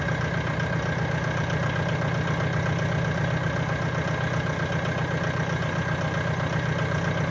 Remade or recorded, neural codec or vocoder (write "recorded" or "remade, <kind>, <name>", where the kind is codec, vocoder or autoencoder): recorded